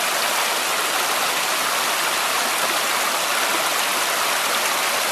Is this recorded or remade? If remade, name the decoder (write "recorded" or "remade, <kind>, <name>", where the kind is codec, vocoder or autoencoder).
recorded